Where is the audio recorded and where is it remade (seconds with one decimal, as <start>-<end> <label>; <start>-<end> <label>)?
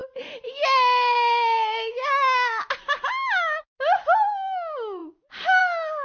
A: 0.0-6.0 recorded